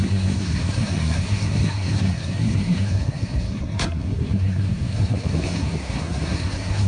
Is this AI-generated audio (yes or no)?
yes